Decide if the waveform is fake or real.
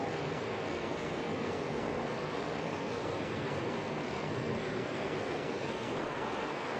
fake